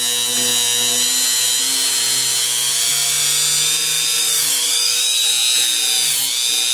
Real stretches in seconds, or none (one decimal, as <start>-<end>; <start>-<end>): 0.0-4.2; 5.3-6.7